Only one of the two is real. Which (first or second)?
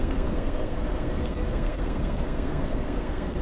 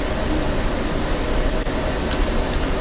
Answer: second